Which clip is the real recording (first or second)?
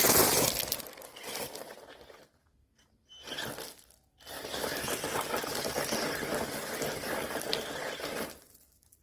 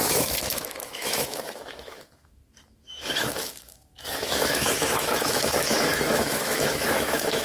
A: first